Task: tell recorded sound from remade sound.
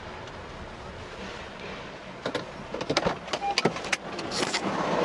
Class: recorded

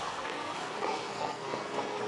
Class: remade